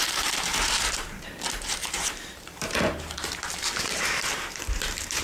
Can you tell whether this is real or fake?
fake